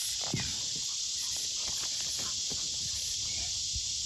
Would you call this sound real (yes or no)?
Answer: yes